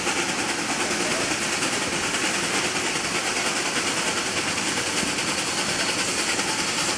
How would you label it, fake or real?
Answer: real